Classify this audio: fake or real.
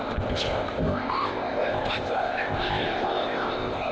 fake